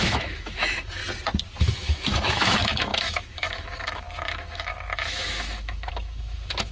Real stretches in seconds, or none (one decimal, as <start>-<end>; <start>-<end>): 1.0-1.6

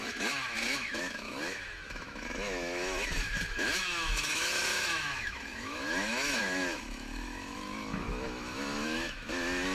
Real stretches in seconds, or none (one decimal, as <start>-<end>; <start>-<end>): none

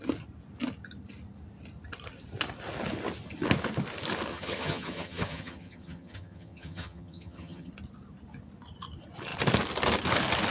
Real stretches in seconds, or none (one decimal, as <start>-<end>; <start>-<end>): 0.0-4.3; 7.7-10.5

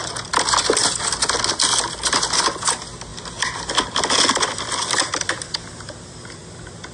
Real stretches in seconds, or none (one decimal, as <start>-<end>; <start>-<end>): 0.0-5.0; 6.4-6.9

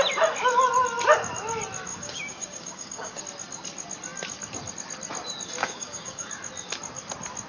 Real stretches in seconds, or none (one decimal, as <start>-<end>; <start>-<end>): 0.0-1.9; 3.2-5.6; 6.3-7.5

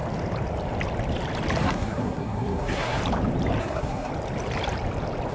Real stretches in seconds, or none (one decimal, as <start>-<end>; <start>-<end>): 0.0-1.6; 3.0-3.6; 4.1-5.3

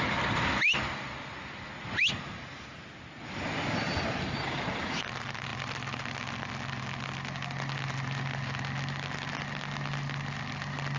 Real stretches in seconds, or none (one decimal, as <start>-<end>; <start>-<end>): 0.0-11.0